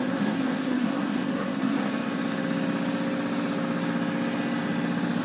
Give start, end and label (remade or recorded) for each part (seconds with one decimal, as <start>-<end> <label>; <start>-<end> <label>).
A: 0.0-1.9 remade; 1.9-5.2 recorded